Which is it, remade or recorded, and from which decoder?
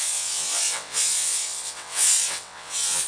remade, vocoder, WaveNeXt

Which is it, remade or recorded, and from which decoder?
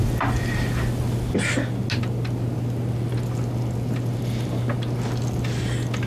recorded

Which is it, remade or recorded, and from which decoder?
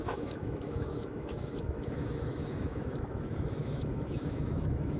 remade, autoencoder, DAC-VAE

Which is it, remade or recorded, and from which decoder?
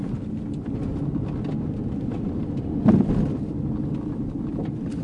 recorded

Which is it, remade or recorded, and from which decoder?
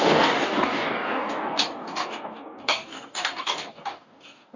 remade, codec, DAC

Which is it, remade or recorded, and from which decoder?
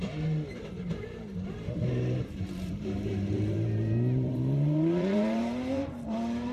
remade, vocoder, BigVGAN v2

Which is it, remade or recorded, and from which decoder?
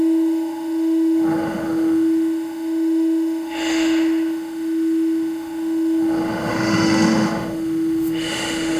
remade, autoencoder, DAC-VAE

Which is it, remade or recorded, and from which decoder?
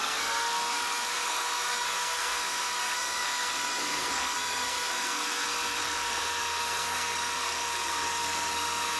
remade, codec, SNAC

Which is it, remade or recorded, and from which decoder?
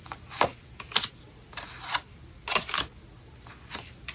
recorded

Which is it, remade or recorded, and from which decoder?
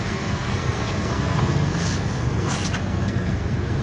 remade, codec, SNAC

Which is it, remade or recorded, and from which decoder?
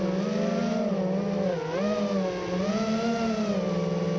recorded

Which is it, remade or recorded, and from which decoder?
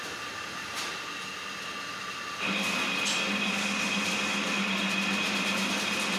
recorded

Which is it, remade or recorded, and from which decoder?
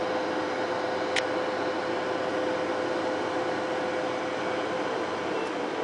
recorded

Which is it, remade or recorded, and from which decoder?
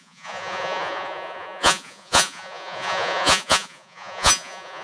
remade, vocoder, Vocos